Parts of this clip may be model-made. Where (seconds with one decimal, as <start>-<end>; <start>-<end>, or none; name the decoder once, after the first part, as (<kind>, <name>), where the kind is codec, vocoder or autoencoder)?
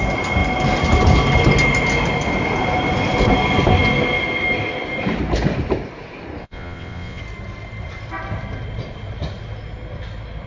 6.4-7.2 (vocoder, WaveNeXt)